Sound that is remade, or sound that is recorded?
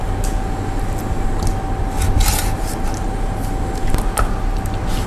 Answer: recorded